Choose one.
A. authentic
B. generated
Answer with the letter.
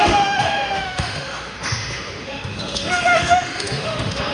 B